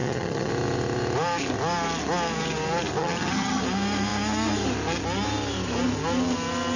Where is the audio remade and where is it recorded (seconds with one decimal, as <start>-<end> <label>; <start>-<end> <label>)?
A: 0.0-0.5 remade; 0.5-3.0 recorded; 3.0-3.6 remade; 3.6-6.8 recorded